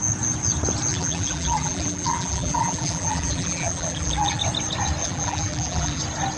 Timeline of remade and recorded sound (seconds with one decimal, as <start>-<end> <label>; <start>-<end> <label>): 0.0-0.9 recorded; 0.9-4.4 remade; 4.4-5.0 recorded; 5.0-6.0 remade; 6.0-6.4 recorded